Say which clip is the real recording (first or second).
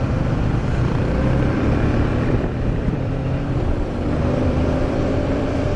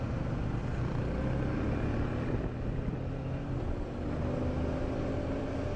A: second